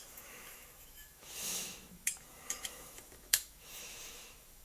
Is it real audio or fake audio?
fake